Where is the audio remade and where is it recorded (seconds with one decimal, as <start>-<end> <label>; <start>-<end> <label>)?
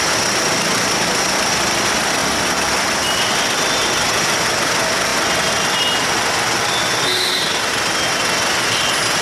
0.0-9.2 recorded